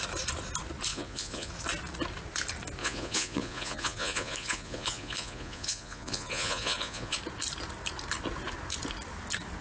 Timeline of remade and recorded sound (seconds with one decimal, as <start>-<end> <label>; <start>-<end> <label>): 0.0-0.9 recorded; 0.9-1.5 remade; 1.5-2.8 recorded; 2.8-7.2 remade; 7.2-9.6 recorded